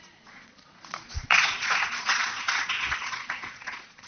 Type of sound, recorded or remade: remade